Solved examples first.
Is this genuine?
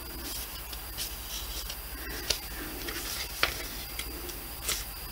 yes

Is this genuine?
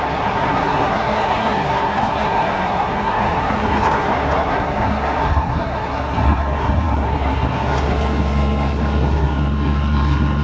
no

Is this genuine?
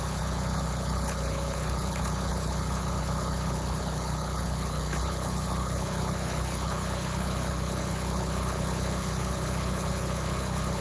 no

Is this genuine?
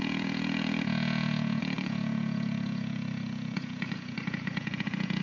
no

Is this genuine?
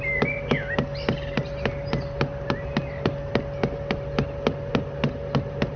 yes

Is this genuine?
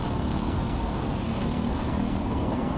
no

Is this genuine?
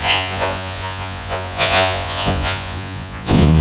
no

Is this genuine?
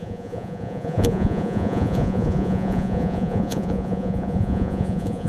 no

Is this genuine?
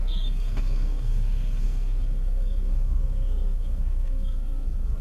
no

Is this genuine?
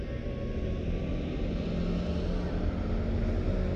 yes